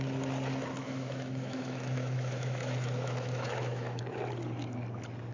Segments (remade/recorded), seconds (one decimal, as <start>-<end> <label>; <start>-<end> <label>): 0.0-0.8 recorded; 0.8-4.0 remade; 4.0-5.3 recorded